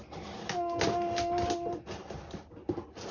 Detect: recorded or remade recorded